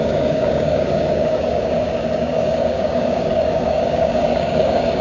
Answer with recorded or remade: remade